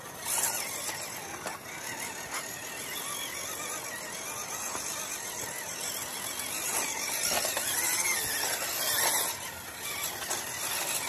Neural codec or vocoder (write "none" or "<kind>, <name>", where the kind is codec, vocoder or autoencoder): none